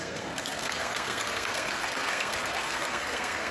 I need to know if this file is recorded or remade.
remade